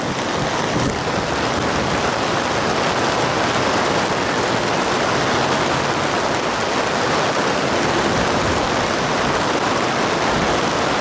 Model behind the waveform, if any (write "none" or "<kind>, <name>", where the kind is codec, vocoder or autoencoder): none